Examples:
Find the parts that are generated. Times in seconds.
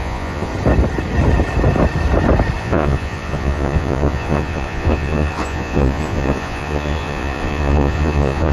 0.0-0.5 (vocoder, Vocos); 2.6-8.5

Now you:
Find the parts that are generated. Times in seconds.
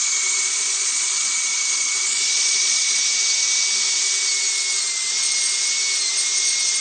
0.0-3.0 (vocoder, Vocos)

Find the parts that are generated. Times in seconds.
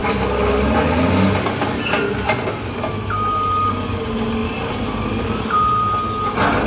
none